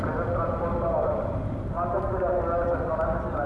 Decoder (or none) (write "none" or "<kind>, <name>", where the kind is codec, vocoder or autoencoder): none